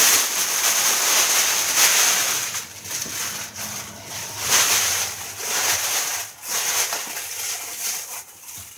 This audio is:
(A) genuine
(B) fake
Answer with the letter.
A